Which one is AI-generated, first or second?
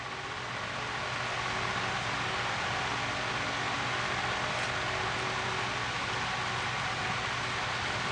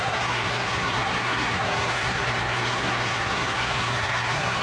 second